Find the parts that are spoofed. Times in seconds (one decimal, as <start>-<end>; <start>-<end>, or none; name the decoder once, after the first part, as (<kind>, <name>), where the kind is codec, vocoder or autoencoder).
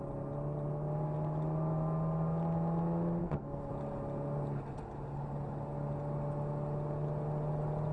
3.2-3.7 (codec, SNAC)